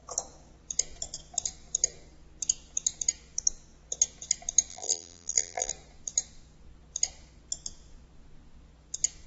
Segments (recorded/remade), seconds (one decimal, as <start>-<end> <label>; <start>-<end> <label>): 0.0-4.7 recorded; 4.7-5.7 remade; 5.7-9.3 recorded